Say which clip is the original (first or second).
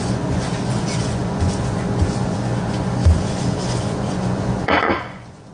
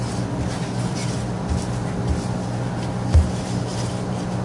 second